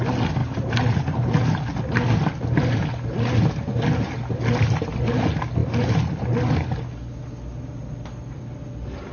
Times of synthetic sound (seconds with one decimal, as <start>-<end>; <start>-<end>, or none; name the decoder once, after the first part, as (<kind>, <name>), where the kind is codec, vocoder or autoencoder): none